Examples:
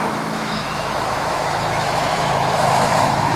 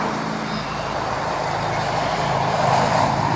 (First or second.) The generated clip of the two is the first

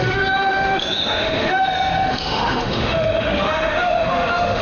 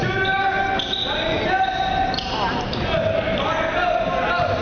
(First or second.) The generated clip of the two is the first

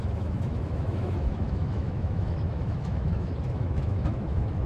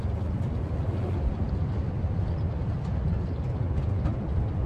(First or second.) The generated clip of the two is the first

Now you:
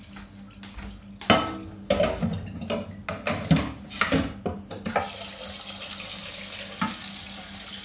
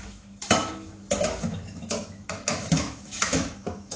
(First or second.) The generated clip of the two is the second